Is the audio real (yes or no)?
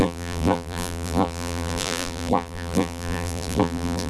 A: no